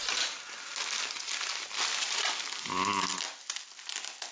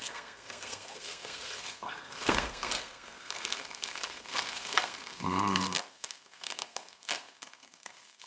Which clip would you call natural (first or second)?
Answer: first